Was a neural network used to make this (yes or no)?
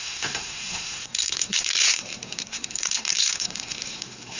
yes